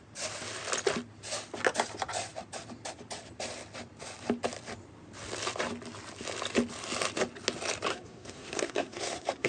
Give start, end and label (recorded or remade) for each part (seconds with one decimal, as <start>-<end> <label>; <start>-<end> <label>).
0.0-7.9 recorded; 7.9-9.5 remade